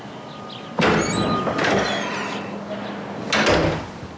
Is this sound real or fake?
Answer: real